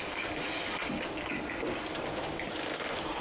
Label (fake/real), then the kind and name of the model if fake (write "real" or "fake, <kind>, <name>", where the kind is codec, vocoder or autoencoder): real